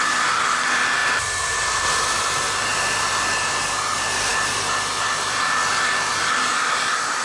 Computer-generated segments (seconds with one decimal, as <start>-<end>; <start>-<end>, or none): none